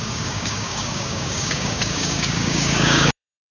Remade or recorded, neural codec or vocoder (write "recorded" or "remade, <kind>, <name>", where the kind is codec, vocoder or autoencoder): remade, codec, DAC